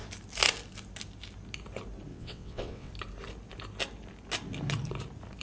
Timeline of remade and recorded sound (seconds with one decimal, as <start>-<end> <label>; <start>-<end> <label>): 0.0-2.1 recorded; 2.1-2.9 remade; 2.9-5.4 recorded